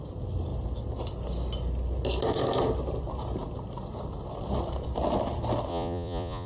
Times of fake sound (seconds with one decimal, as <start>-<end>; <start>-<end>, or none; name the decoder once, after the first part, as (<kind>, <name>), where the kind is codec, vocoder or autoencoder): 5.7-6.5 (vocoder, Vocos)